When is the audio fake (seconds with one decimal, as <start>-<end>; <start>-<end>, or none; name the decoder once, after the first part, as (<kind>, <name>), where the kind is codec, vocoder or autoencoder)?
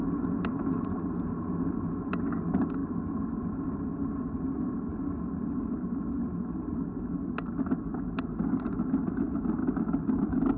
none